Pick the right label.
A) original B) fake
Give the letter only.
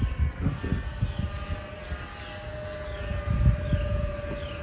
A